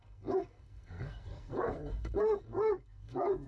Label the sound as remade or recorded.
remade